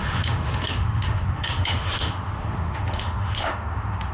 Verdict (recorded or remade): remade